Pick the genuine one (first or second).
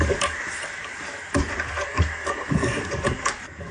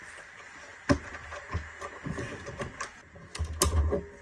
second